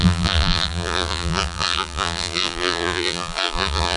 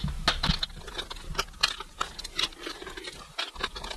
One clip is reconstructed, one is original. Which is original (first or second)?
second